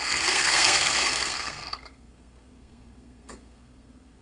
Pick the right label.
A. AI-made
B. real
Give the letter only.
A